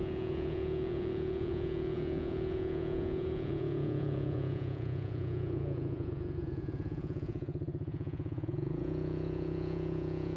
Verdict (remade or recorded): remade